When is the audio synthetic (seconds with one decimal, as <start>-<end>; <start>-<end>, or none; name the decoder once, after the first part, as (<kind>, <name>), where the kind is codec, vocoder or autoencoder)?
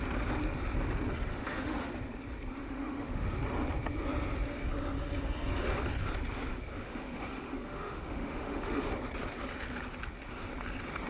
1.3-1.9 (autoencoder, DAC-VAE); 2.6-3.3; 6.5-8.9